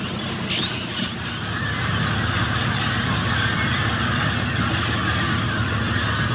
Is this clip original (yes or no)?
yes